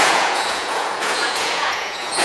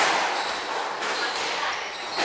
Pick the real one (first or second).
second